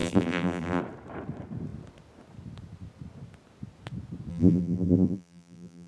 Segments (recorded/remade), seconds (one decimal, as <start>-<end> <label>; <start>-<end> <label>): 0.0-0.8 remade; 0.8-4.3 recorded; 4.3-5.9 remade